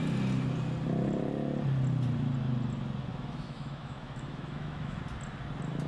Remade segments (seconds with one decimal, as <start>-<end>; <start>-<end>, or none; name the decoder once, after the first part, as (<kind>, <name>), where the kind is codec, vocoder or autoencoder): 3.1-5.0 (autoencoder, DAC-VAE)